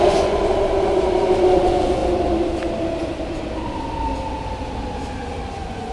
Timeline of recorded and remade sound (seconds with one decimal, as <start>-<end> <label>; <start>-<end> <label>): 0.0-0.4 remade; 0.4-1.6 recorded; 1.6-2.0 remade; 2.0-5.5 recorded; 5.5-5.9 remade